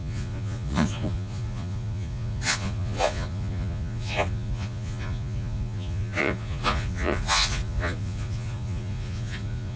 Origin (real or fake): fake